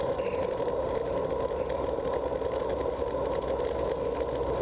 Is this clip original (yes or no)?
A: yes